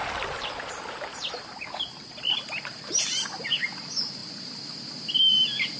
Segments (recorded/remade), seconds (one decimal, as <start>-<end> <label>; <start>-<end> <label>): 0.0-5.8 recorded